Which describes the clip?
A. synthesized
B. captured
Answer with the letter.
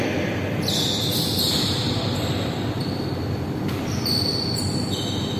B